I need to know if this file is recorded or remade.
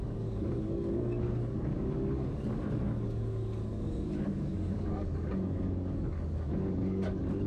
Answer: remade